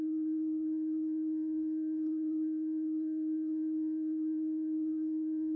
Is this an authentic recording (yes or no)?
no